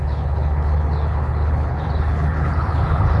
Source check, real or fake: fake